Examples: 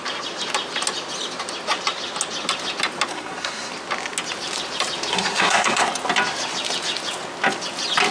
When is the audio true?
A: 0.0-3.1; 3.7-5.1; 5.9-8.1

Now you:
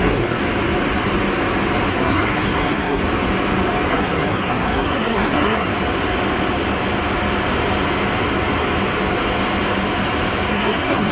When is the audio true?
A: 0.4-1.9; 3.0-3.9; 5.7-10.5

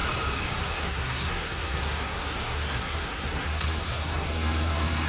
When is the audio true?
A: 0.0-0.6

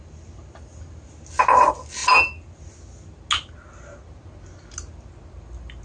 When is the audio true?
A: 0.0-5.8

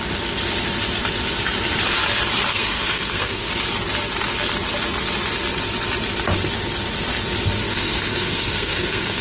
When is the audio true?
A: 0.0-2.5; 3.5-7.6

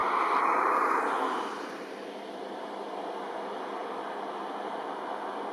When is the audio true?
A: 0.0-5.5

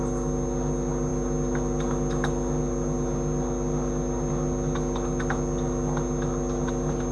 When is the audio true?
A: 0.0-7.1

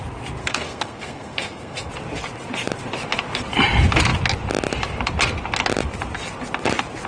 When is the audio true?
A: 0.0-0.4; 1.9-7.1